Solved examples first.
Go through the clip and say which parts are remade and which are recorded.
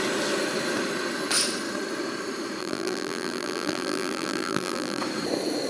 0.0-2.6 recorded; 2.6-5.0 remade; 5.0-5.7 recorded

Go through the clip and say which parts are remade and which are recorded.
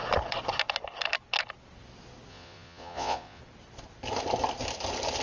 0.0-2.3 recorded; 2.3-3.4 remade; 3.4-5.2 recorded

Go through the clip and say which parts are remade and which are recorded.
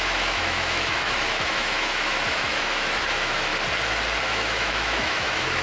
0.0-3.5 remade; 3.5-4.2 recorded; 4.2-5.6 remade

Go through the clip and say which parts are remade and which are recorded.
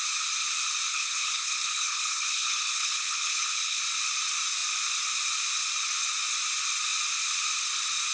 0.0-0.9 recorded; 0.9-3.8 remade; 3.8-8.1 recorded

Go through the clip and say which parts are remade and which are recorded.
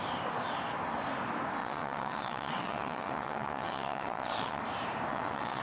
0.0-1.6 recorded; 1.6-4.6 remade; 4.6-5.1 recorded; 5.1-5.6 remade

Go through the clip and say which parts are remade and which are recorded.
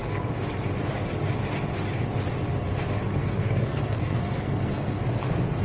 0.0-3.2 recorded; 3.2-5.0 remade; 5.0-5.6 recorded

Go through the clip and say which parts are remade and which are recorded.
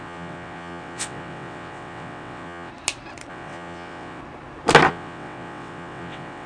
0.0-2.7 remade; 2.7-3.3 recorded; 3.3-4.2 remade; 4.2-4.9 recorded; 4.9-6.5 remade